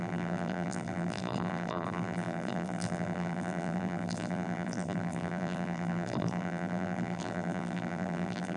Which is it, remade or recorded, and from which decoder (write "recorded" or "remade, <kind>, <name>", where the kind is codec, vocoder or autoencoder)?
remade, vocoder, BigVGAN v2